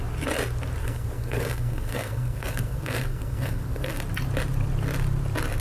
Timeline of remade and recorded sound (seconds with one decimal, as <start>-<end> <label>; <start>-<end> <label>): 0.0-0.8 recorded; 0.8-4.0 remade; 4.0-5.6 recorded